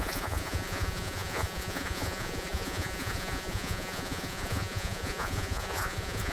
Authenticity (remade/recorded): remade